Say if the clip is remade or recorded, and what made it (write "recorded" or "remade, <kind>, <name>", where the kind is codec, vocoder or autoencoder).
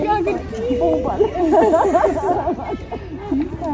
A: recorded